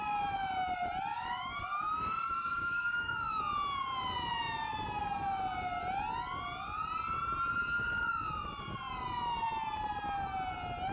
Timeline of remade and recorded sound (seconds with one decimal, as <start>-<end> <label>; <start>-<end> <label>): 0.0-1.1 recorded; 1.1-3.4 remade; 3.4-10.9 recorded